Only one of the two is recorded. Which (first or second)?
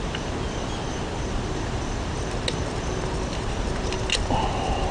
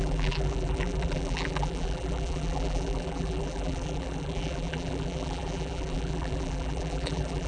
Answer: first